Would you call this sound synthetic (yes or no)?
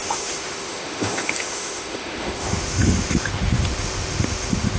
yes